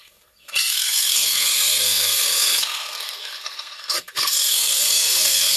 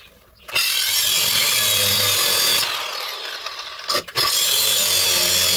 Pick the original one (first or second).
second